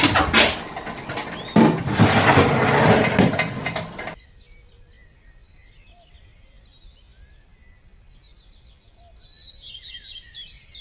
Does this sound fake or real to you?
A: real